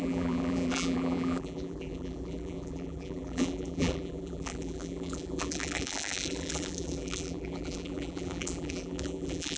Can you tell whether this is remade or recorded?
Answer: remade